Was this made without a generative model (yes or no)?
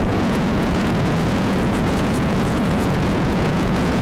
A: no